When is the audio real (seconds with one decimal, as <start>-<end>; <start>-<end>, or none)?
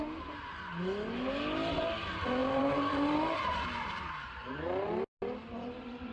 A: 0.0-2.4; 5.1-6.1